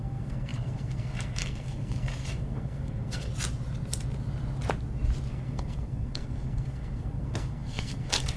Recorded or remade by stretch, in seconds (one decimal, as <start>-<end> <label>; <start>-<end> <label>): 0.0-3.3 remade; 3.3-5.3 recorded; 5.3-8.4 remade